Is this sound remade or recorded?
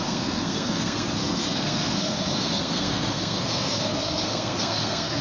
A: remade